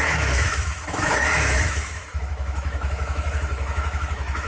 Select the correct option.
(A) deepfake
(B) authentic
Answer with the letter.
A